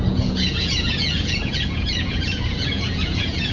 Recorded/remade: remade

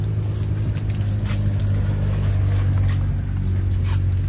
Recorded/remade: recorded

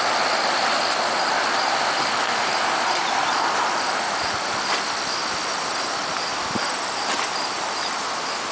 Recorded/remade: recorded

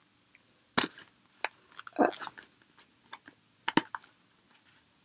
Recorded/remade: recorded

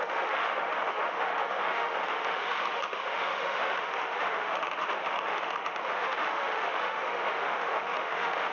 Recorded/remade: remade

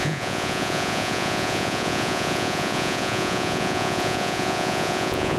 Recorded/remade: remade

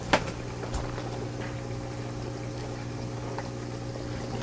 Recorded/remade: recorded